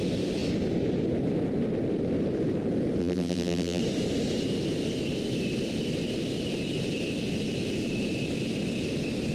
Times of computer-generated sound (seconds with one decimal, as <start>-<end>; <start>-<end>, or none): 3.0-3.8